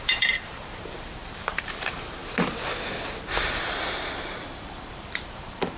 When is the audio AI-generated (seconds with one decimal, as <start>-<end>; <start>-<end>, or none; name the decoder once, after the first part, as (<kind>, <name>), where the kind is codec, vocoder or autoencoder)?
0.0-2.2 (vocoder, BigVGAN v2); 4.9-5.8